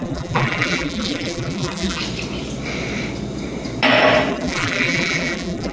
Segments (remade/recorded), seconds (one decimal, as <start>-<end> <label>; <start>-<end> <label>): 0.0-2.0 remade; 2.0-4.3 recorded; 4.3-5.7 remade